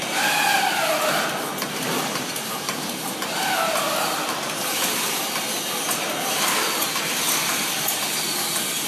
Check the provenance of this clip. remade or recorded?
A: recorded